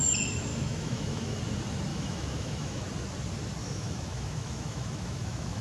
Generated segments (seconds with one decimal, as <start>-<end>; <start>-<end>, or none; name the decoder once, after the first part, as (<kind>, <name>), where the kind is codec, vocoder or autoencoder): 0.5-1.4 (autoencoder, DAC-VAE); 1.9-2.8; 3.6-5.6